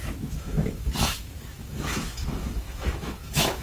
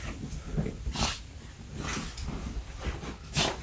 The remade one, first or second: first